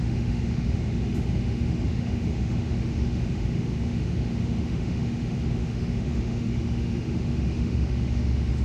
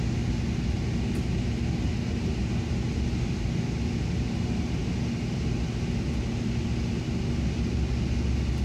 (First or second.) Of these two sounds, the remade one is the first